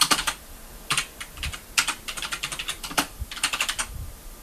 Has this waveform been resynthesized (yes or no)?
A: yes